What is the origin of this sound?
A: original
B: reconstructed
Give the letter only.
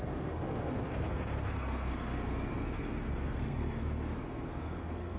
B